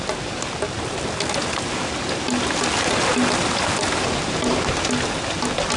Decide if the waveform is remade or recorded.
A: recorded